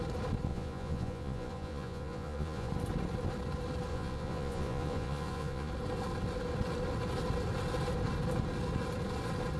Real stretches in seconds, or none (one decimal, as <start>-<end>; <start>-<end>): 0.0-0.5; 2.7-3.9; 5.7-9.6